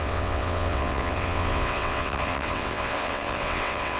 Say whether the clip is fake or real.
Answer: fake